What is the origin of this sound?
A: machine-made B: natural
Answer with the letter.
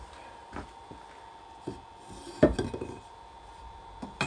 B